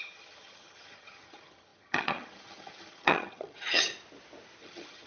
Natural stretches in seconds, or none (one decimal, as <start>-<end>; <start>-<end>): 3.9-4.6